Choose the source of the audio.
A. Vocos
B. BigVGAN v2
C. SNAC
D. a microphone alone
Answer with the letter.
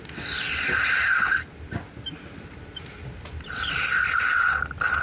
D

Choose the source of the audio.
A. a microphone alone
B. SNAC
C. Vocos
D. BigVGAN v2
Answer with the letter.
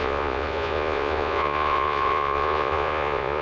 C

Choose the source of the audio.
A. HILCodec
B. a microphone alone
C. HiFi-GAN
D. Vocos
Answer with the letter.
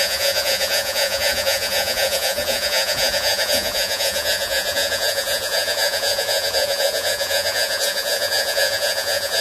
D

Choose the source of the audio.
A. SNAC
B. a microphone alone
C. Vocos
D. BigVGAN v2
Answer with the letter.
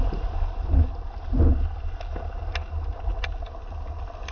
B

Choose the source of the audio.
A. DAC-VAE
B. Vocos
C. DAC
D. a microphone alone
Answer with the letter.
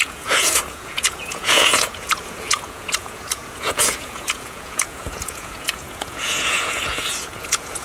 B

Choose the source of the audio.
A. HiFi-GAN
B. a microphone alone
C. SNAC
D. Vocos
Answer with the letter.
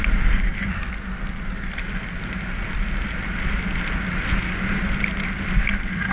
B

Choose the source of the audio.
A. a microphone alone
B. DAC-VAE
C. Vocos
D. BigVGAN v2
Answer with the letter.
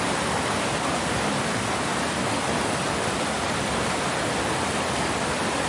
A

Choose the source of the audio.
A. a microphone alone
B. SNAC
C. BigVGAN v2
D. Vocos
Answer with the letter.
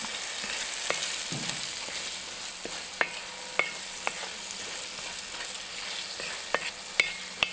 A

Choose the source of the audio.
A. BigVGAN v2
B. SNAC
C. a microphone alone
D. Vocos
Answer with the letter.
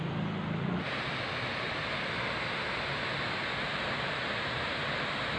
C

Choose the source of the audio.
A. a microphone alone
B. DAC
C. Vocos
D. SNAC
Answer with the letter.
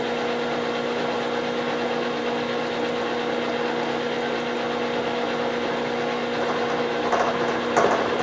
A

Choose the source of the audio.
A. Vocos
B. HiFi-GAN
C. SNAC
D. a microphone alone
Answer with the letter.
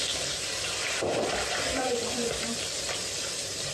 D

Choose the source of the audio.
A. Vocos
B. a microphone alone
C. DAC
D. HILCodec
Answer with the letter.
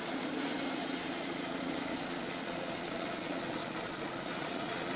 A